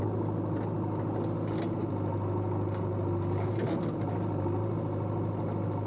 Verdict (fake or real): real